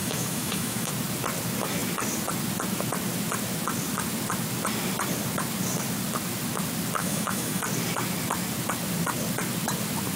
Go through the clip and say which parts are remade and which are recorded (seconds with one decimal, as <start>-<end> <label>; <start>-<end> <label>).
0.0-0.9 remade; 0.9-7.0 recorded; 7.0-7.6 remade; 7.6-10.2 recorded